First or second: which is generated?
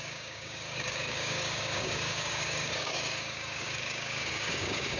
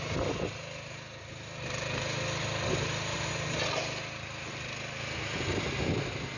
first